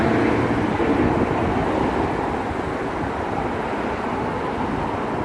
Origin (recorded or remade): recorded